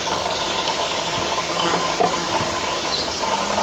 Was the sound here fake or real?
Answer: fake